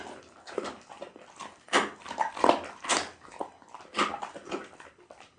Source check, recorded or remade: recorded